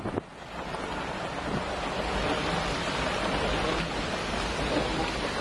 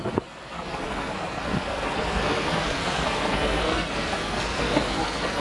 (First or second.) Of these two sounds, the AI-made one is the second